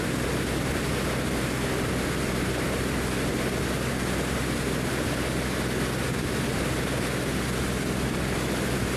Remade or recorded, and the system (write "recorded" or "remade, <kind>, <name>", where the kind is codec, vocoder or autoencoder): recorded